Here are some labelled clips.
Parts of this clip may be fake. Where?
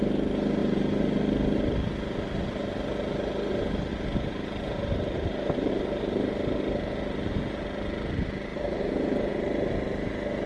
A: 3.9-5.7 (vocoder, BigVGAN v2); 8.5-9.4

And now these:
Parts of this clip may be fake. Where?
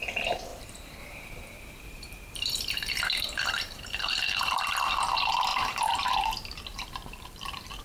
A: 0.5-4.6 (vocoder, BigVGAN v2); 5.5-6.1; 6.7-7.8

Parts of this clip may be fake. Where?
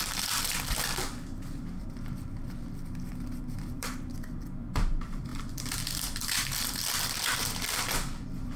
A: 0.0-8.6 (vocoder, BigVGAN v2)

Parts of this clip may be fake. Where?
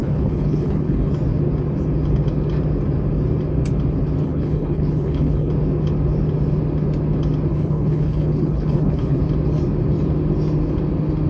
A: 0.0-1.1 (codec, HILCodec); 4.2-5.5; 7.5-9.2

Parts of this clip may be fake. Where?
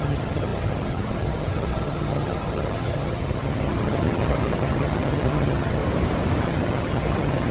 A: 0.0-5.8 (vocoder, HiFi-GAN); 6.4-7.5